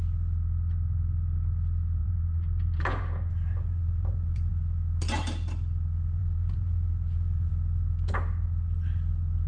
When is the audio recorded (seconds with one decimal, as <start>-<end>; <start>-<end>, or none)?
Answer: 0.0-2.0; 4.5-6.2; 7.5-9.5